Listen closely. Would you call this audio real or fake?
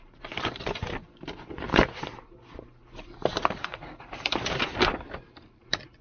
fake